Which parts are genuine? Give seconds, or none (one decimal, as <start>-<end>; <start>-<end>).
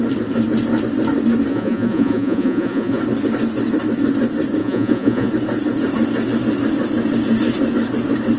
0.0-1.5; 3.0-4.6; 5.3-8.4